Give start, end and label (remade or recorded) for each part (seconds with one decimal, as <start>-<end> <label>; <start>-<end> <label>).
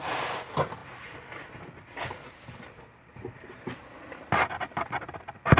0.0-0.8 recorded; 0.8-3.8 remade; 3.8-5.6 recorded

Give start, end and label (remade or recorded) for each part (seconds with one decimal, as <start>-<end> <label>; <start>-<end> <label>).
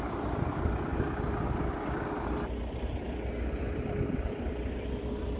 0.0-0.9 remade; 0.9-2.7 recorded; 2.7-5.4 remade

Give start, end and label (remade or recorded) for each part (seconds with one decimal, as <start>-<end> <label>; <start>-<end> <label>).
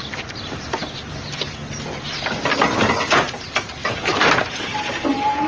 0.0-5.5 remade